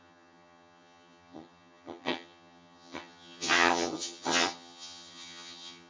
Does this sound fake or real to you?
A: fake